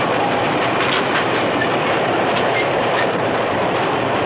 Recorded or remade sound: remade